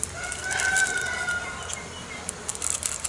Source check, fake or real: real